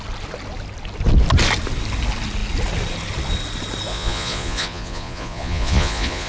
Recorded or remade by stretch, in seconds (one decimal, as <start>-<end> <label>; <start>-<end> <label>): 0.0-3.9 recorded; 3.9-6.3 remade